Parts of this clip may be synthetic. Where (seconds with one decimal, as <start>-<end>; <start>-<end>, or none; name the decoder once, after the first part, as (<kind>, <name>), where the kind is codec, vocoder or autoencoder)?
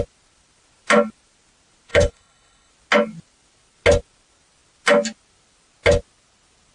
1.9-2.7 (codec, HILCodec)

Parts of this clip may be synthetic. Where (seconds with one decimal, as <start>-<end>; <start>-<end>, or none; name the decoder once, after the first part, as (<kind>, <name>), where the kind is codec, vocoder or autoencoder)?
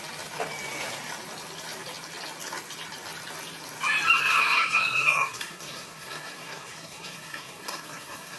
4.2-8.4 (codec, SNAC)